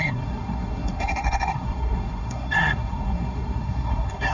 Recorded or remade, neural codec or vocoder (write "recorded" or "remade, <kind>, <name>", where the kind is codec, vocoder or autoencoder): remade, codec, SNAC